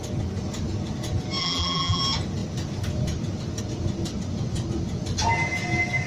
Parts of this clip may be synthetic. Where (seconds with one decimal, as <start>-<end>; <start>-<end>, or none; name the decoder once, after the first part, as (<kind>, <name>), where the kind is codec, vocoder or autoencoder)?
1.4-2.0 (vocoder, BigVGAN v2)